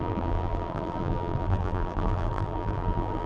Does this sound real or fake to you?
fake